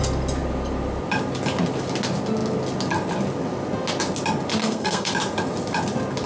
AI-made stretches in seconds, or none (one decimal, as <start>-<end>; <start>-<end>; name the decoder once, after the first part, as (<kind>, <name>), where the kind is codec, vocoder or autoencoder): 4.6-5.1 (codec, SNAC)